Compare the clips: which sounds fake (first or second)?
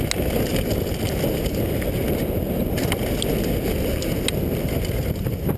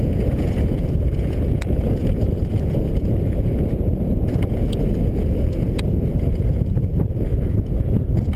second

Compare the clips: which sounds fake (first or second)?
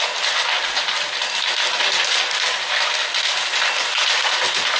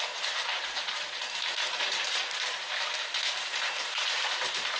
second